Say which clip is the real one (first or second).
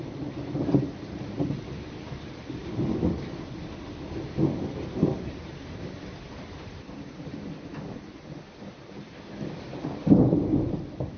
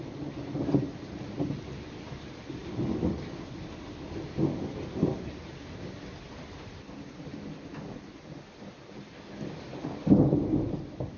second